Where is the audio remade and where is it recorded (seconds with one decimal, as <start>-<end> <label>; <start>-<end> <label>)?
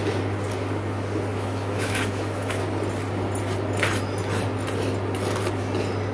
0.0-1.3 recorded; 1.3-2.6 remade; 2.6-6.1 recorded